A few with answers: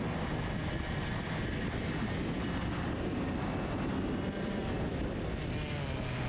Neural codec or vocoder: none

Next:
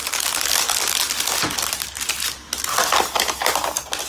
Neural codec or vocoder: none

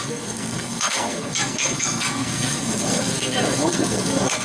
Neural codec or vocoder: codec, SNAC